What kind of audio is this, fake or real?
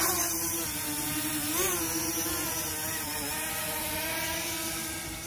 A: real